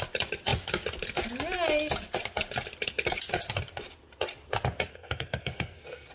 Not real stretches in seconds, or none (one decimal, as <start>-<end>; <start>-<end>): 4.9-6.1